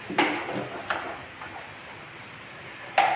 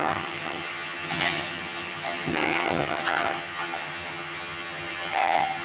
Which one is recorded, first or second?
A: first